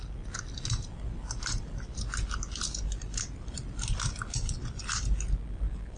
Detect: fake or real real